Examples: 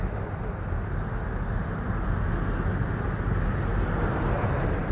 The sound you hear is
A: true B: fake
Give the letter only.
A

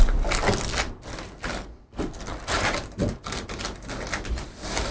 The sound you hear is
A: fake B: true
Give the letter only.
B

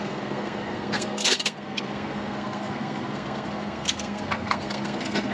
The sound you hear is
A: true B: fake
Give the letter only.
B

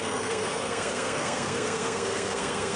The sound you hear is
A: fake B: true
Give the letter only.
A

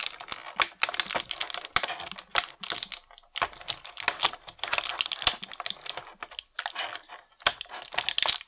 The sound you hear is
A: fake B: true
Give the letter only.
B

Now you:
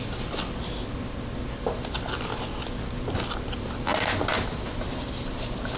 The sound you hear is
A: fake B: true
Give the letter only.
B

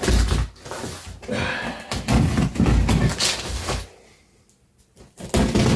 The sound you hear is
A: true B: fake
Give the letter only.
A